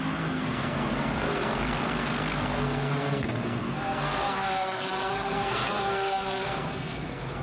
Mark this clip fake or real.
fake